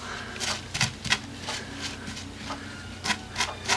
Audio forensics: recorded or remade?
recorded